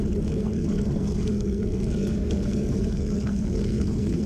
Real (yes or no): no